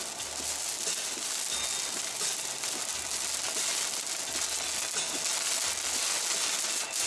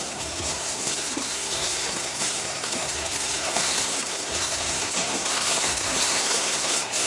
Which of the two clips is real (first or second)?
first